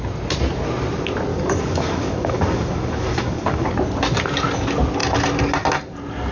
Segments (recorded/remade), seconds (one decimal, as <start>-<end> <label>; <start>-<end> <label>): 0.0-1.3 recorded; 1.3-3.7 remade; 3.7-6.3 recorded